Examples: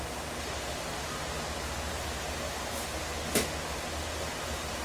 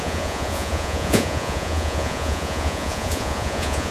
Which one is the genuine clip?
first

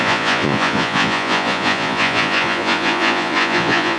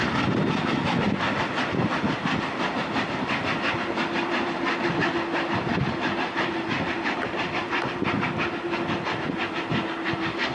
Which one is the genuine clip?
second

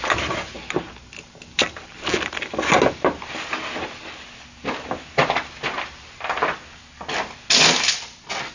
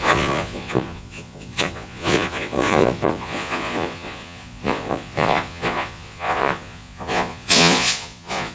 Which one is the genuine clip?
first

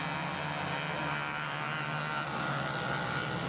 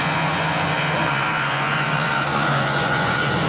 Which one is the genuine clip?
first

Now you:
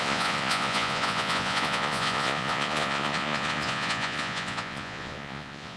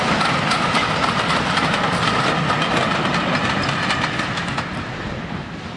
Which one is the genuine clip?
second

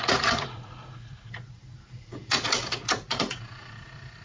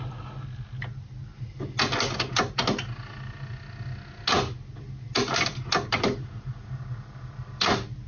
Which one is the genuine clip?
second